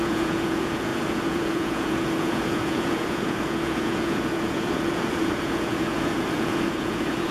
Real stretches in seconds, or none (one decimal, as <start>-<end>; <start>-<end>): none